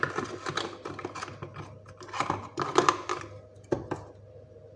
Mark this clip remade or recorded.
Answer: recorded